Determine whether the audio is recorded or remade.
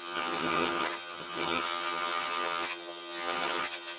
remade